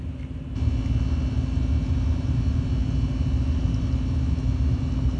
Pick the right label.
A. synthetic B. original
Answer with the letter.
B